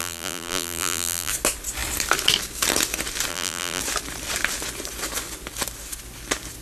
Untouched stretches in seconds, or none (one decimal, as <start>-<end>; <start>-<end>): 1.3-3.3; 3.8-6.6